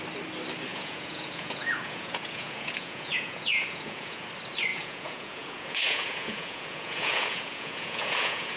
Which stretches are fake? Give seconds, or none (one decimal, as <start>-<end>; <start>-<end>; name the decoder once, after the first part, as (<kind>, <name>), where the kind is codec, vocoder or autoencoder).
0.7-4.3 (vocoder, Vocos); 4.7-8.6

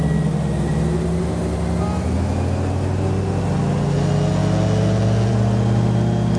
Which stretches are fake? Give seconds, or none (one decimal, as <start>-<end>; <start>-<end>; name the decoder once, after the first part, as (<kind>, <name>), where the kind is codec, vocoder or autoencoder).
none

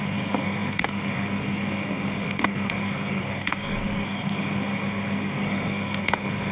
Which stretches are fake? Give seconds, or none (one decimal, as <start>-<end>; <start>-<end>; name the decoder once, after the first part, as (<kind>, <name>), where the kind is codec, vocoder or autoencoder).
0.0-6.5 (codec, SNAC)

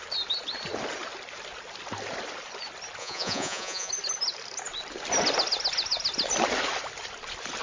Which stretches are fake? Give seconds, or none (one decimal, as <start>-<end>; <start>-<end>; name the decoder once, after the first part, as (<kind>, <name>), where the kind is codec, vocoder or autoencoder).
3.0-3.9 (vocoder, Vocos)